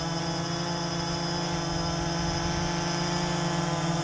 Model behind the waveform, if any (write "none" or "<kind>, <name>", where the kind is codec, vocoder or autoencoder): none